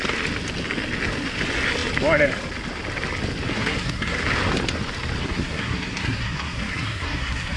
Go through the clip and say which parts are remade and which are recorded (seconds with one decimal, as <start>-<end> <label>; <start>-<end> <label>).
0.0-3.5 recorded; 3.5-4.2 remade; 4.2-5.2 recorded; 5.2-7.6 remade